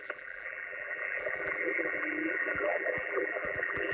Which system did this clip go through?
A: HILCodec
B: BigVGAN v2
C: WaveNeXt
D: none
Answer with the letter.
B